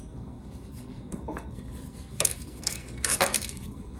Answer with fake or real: fake